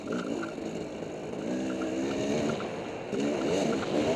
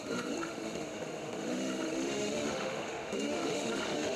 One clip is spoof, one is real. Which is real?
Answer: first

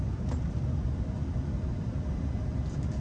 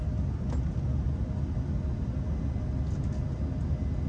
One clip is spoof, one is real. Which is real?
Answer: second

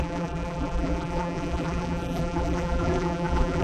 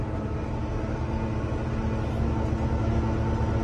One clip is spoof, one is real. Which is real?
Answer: second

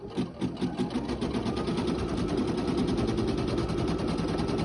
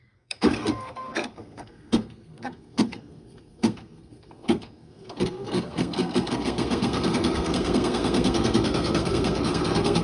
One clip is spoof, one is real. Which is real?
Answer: first